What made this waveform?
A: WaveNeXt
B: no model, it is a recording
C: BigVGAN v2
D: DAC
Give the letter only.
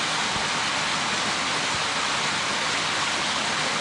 B